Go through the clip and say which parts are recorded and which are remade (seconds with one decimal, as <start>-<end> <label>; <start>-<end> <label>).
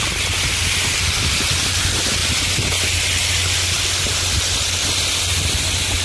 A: 0.0-6.0 recorded